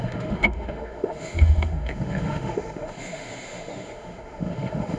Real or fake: fake